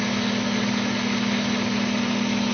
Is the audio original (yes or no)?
yes